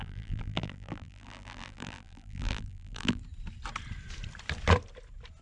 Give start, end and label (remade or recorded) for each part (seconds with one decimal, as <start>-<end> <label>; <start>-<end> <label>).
0.0-3.2 remade; 3.2-5.4 recorded